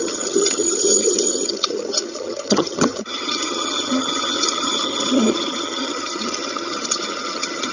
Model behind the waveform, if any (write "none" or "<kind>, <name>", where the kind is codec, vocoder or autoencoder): vocoder, HiFi-GAN